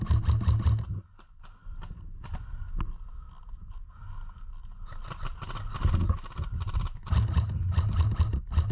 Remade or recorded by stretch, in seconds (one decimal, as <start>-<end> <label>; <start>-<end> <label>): 0.0-8.7 recorded